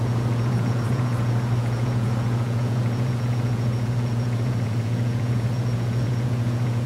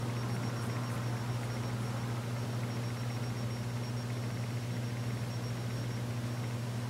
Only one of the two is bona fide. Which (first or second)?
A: second